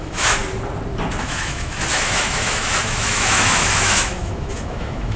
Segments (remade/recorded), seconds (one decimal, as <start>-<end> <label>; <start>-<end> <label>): 0.0-0.4 remade; 0.4-1.2 recorded; 1.2-5.2 remade